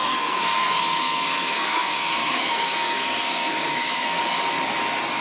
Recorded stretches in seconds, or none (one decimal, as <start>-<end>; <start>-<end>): 4.2-5.2